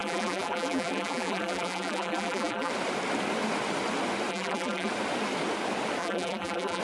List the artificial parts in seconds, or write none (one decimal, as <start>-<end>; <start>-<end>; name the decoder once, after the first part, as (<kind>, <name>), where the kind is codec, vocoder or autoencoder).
0.0-2.7 (vocoder, BigVGAN v2); 4.3-4.9; 6.0-6.8